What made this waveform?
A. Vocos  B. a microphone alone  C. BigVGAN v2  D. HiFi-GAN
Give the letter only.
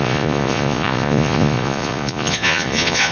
A